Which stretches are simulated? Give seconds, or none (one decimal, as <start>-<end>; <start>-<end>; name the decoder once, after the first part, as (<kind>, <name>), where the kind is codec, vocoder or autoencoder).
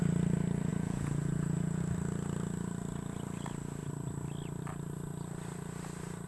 0.7-1.8 (vocoder, Vocos)